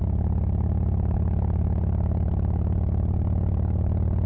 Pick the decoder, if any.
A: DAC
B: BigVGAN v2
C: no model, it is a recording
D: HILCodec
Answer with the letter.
C